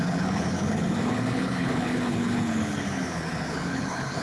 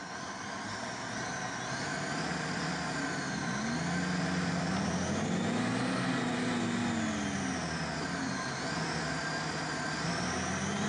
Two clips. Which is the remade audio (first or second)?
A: first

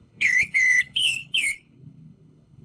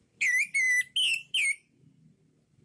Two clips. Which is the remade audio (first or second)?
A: first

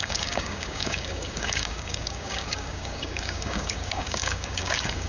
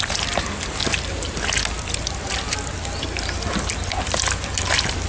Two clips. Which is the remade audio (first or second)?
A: first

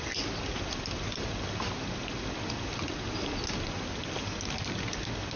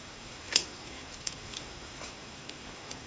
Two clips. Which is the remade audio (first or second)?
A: second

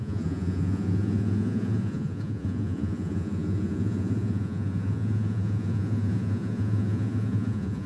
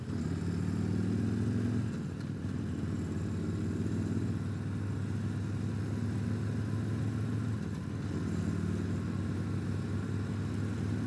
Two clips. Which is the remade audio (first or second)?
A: first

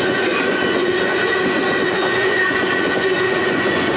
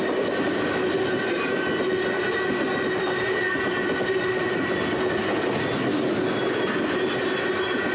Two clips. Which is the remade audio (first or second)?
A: first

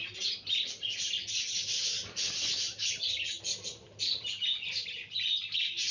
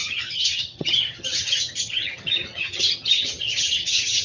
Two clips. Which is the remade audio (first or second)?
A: second